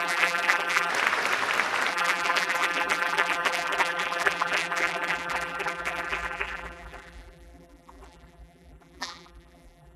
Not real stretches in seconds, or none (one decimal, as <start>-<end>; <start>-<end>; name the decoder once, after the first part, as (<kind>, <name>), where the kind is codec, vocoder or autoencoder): 0.0-0.9 (vocoder, BigVGAN v2); 1.9-10.0